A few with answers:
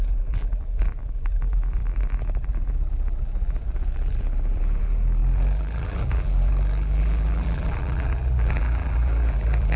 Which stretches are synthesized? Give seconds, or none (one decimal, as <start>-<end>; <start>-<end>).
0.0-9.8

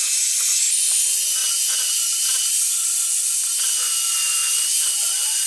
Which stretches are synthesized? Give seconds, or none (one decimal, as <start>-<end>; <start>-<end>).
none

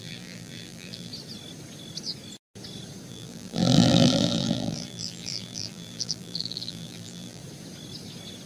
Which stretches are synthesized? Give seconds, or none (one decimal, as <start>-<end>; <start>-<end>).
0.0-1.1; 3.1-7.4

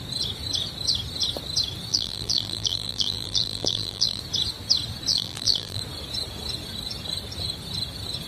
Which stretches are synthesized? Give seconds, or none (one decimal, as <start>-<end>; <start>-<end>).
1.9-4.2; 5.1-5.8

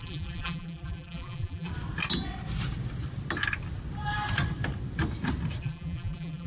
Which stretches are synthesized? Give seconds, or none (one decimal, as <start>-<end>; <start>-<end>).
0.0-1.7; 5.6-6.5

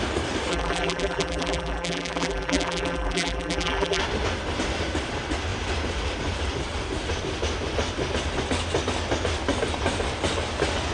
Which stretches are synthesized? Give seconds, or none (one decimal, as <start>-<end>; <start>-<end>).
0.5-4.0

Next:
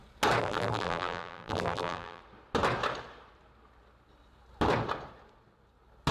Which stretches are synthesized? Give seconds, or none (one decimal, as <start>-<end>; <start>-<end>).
0.4-2.2

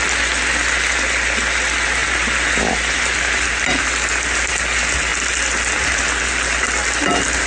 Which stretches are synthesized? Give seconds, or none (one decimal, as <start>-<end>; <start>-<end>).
none